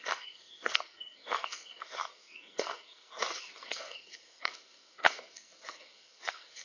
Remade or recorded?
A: remade